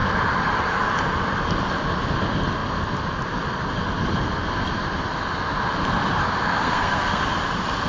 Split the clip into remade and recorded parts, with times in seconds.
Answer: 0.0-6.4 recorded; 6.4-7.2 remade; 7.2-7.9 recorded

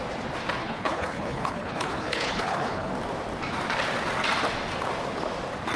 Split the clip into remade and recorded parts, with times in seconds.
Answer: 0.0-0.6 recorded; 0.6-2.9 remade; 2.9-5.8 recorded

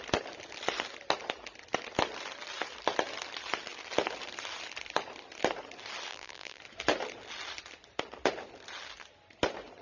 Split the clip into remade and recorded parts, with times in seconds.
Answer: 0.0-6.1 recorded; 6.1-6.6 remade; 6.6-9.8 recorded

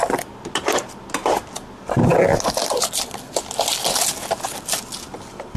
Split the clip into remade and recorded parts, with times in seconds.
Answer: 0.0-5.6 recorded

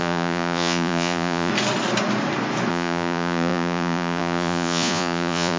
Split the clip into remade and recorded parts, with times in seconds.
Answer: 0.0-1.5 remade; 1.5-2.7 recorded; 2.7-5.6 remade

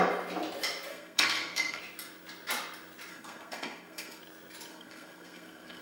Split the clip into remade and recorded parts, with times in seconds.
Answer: 0.0-0.9 recorded; 0.9-1.8 remade; 1.8-3.1 recorded; 3.1-4.2 remade; 4.2-4.7 recorded; 4.7-5.8 remade

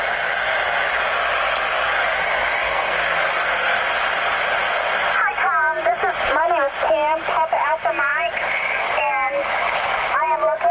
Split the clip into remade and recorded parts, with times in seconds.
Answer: 0.0-2.6 recorded; 2.6-3.8 remade; 3.8-10.7 recorded